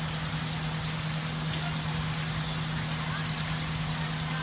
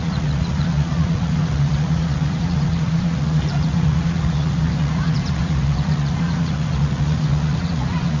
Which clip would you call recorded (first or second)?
first